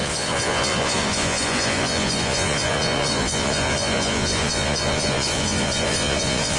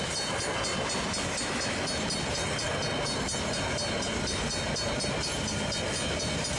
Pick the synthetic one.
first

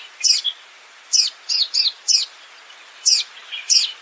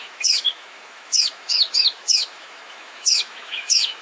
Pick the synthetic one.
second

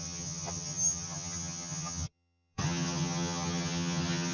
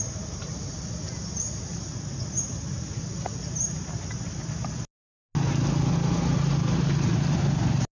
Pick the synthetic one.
first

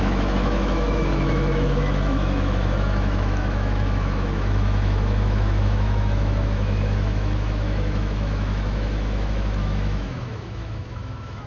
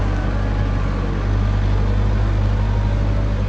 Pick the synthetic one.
first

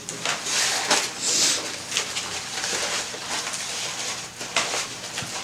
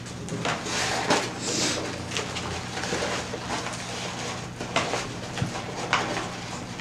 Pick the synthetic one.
first